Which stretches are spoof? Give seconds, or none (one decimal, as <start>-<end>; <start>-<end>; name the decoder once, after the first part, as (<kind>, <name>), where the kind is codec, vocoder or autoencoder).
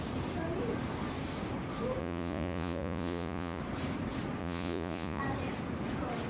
2.0-3.6 (vocoder, Vocos); 4.4-5.2